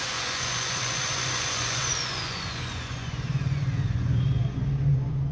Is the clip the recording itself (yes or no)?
no